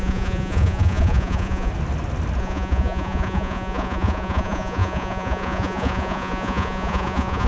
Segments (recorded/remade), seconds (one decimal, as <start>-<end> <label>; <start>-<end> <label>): 0.0-1.7 remade; 1.7-2.4 recorded; 2.4-7.5 remade